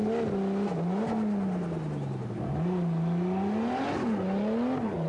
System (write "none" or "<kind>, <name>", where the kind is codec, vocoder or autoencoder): none